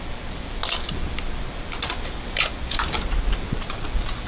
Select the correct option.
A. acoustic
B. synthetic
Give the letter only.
A